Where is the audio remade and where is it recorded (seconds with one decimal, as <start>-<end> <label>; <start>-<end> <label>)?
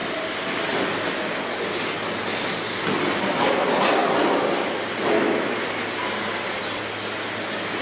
0.0-1.0 remade; 1.0-4.0 recorded; 4.0-5.0 remade; 5.0-7.8 recorded